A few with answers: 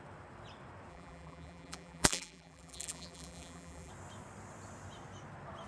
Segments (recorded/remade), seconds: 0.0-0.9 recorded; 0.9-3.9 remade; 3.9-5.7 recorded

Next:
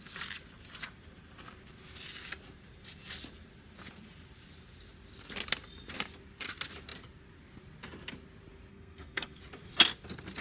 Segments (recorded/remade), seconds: 0.0-8.7 recorded; 8.7-9.4 remade; 9.4-10.4 recorded

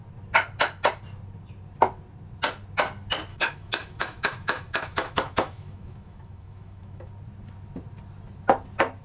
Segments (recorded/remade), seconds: 0.0-3.3 recorded; 3.3-7.1 remade; 7.1-9.0 recorded

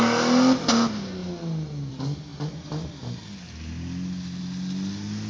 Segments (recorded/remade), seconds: 0.0-5.3 recorded

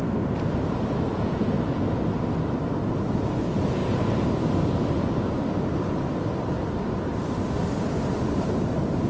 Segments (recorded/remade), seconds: 0.0-1.1 recorded; 1.1-1.8 remade; 1.8-9.1 recorded

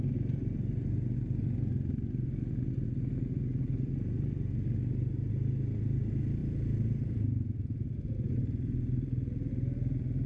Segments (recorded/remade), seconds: 0.0-6.4 recorded; 6.4-9.5 remade; 9.5-10.3 recorded